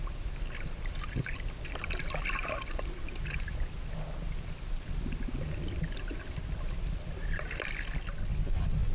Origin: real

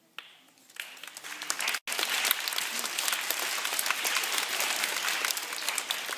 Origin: real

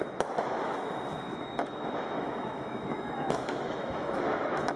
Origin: fake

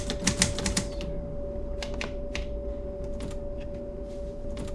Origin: real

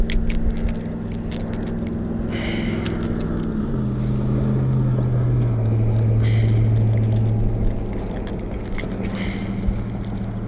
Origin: real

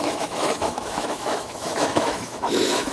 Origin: fake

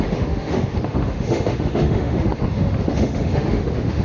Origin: fake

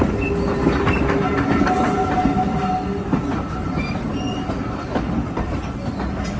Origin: real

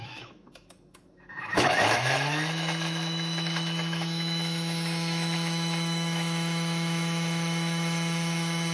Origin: fake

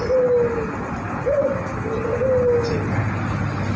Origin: real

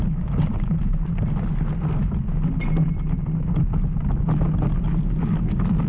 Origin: real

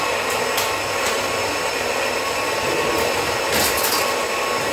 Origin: real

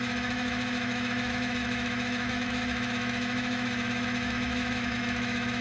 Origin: fake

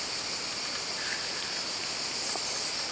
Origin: real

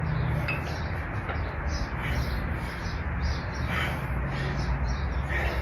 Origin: real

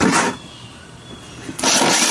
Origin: real